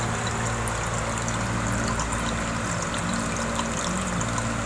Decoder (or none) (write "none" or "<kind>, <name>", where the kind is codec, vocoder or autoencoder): none